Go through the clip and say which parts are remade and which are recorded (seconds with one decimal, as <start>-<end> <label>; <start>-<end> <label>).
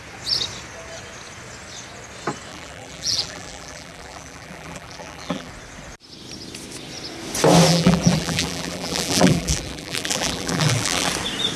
0.0-2.5 recorded; 2.5-5.5 remade; 5.5-7.7 recorded; 7.7-11.1 remade; 11.1-11.6 recorded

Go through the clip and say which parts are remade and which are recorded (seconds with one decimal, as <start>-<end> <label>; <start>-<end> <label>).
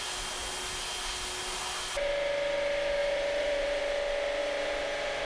0.0-3.0 recorded; 3.0-3.8 remade; 3.8-4.4 recorded; 4.4-5.2 remade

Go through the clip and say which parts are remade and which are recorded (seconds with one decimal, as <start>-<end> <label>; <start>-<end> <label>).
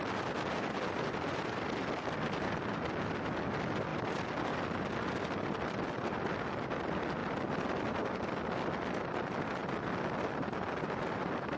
0.0-11.6 recorded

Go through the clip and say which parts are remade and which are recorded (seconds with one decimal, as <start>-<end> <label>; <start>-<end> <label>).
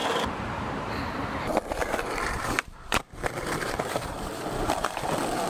0.0-0.9 remade; 0.9-1.8 recorded; 1.8-5.1 remade; 5.1-5.5 recorded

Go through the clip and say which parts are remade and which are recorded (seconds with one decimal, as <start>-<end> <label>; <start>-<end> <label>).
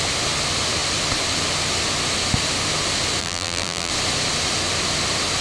0.0-3.2 recorded; 3.2-3.9 remade; 3.9-5.4 recorded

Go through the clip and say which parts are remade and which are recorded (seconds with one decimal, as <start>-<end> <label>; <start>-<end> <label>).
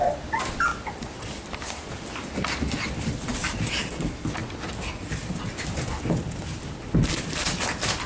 0.0-0.7 recorded; 0.7-2.0 remade; 2.0-8.1 recorded